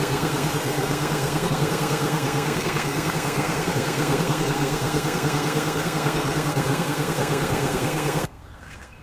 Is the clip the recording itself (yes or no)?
no